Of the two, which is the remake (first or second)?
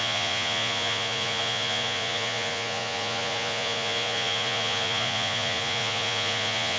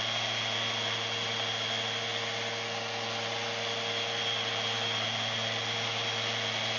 first